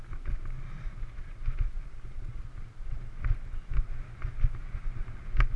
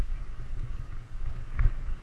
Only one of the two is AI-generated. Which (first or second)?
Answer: second